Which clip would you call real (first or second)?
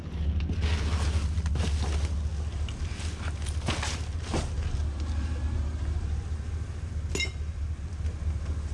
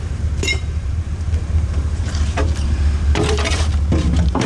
first